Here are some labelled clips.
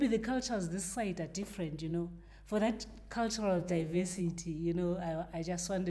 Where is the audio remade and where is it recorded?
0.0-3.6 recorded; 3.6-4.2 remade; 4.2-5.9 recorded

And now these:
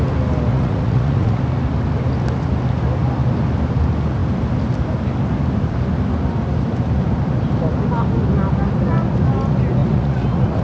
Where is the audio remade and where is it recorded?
0.0-0.5 recorded; 0.5-1.4 remade; 1.4-9.8 recorded; 9.8-10.6 remade

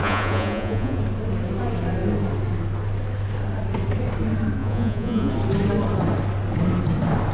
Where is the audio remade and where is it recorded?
0.0-1.0 remade; 1.0-4.6 recorded; 4.6-5.3 remade; 5.3-7.3 recorded

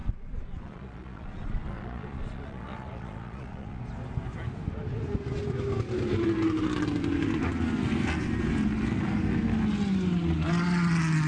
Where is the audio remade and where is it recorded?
0.0-3.8 remade; 3.8-11.3 recorded

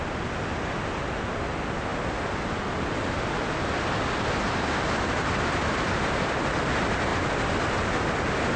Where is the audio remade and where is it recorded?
0.0-8.6 recorded

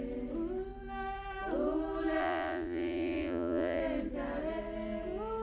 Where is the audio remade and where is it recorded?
0.0-2.2 recorded; 2.2-3.8 remade; 3.8-5.4 recorded

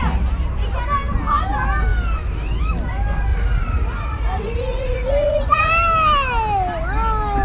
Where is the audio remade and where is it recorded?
0.0-3.3 recorded; 3.3-5.7 remade; 5.7-7.4 recorded